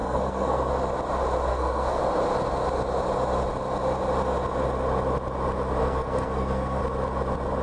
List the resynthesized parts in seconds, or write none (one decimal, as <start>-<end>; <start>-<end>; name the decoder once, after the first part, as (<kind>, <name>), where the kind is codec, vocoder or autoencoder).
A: 0.0-0.7 (codec, SNAC); 1.5-2.0; 5.8-6.8